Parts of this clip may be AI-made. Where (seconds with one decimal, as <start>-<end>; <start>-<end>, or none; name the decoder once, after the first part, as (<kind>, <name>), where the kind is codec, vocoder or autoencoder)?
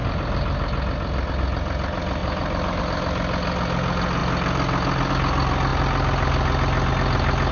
2.2-2.8 (vocoder, BigVGAN v2)